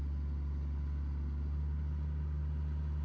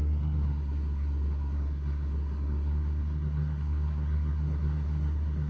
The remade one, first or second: second